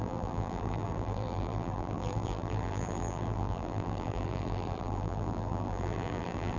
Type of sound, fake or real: fake